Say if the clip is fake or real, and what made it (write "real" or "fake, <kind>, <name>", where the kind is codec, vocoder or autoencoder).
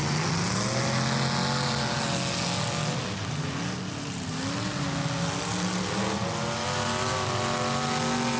real